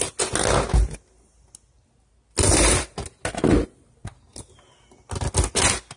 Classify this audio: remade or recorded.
recorded